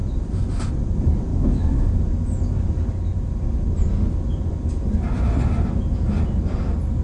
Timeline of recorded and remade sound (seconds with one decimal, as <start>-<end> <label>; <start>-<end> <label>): 0.0-1.3 recorded; 1.3-1.9 remade; 1.9-7.0 recorded